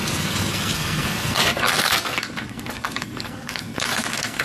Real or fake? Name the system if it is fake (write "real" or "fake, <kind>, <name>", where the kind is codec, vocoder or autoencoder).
fake, codec, SNAC